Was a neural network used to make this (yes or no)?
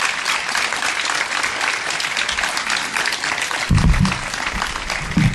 no